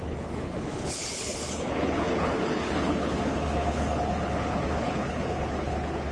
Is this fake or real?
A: fake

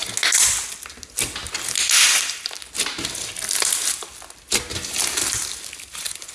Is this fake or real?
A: real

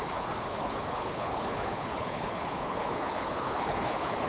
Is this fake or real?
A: fake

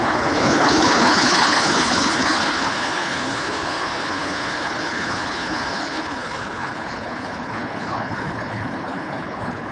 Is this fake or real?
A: fake